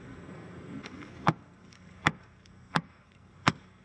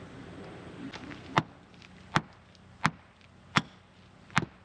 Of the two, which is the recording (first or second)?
second